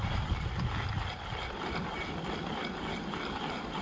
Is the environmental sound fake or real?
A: real